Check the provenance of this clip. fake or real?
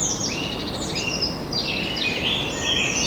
real